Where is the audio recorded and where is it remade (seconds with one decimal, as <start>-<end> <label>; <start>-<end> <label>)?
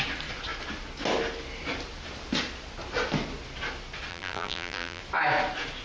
0.0-4.1 recorded; 4.1-5.0 remade; 5.0-5.8 recorded